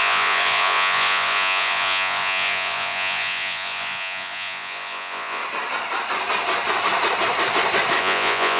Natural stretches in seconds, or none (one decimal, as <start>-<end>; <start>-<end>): 5.4-8.0